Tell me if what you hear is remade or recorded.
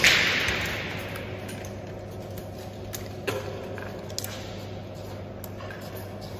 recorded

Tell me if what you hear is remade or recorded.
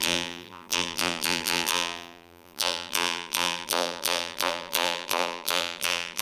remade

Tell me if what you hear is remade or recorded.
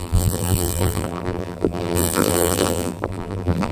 remade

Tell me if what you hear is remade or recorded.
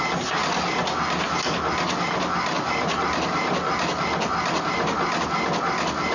recorded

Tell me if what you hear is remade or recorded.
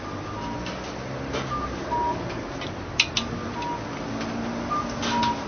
recorded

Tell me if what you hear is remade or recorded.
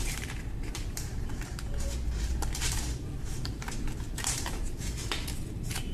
remade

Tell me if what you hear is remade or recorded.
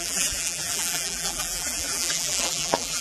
remade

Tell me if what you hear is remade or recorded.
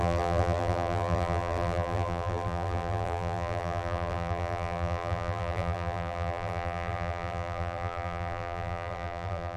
remade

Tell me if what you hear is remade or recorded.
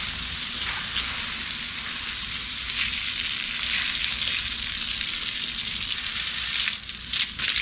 remade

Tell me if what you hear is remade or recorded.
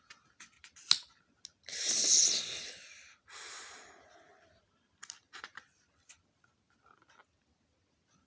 recorded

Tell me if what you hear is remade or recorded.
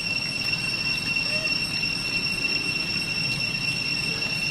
recorded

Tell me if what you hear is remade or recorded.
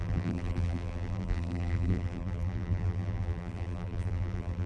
remade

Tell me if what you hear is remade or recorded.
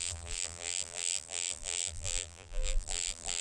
remade